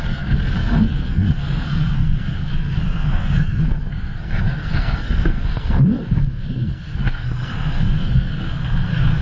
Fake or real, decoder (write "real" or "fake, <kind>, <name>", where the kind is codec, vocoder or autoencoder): fake, codec, SNAC